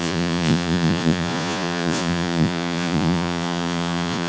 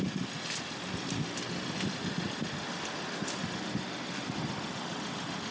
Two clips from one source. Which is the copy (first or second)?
first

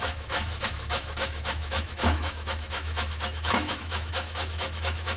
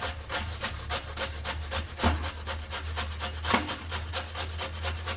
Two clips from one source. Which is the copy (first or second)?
first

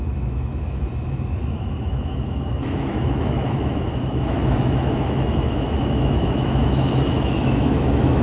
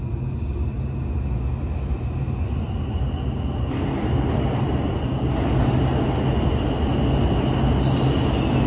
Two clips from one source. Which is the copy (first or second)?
first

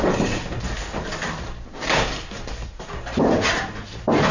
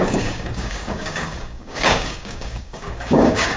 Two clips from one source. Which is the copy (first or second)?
second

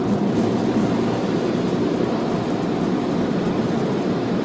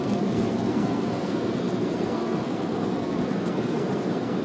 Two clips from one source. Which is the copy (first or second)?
second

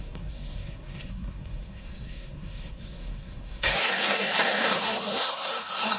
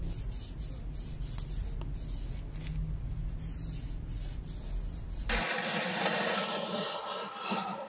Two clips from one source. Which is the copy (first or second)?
first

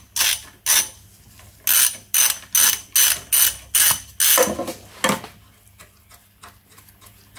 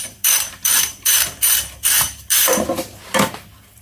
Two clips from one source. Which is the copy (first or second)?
second